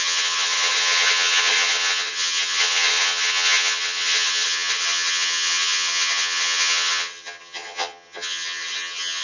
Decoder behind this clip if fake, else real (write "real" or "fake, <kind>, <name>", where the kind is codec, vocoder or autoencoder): fake, vocoder, HiFi-GAN